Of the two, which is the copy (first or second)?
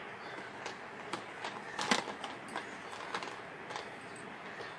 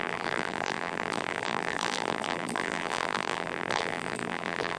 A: second